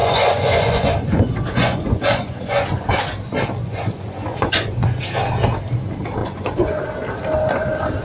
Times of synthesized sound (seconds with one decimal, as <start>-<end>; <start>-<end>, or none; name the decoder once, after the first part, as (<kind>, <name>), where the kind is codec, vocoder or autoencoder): 0.0-2.9 (vocoder, Vocos); 3.6-5.0; 6.2-6.8